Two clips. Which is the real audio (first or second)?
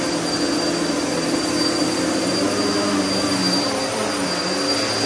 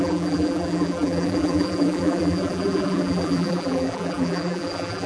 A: first